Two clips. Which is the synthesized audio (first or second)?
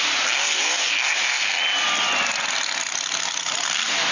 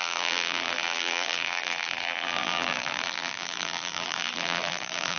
second